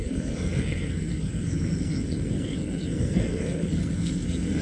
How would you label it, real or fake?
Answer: fake